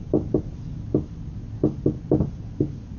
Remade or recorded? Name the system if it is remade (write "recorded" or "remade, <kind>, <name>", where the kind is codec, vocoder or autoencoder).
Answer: recorded